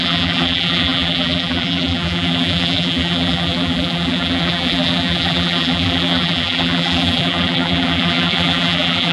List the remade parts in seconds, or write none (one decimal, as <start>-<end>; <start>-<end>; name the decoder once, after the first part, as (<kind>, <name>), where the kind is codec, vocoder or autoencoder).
0.0-9.1 (vocoder, BigVGAN v2)